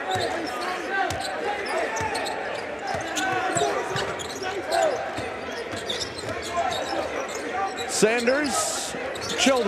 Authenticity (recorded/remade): recorded